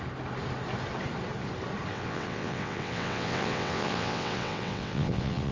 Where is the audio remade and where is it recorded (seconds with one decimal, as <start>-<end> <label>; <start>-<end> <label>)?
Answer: 0.0-1.9 recorded; 1.9-5.5 remade